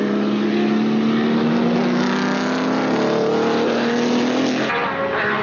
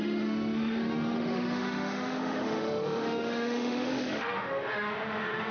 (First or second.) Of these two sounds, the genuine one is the first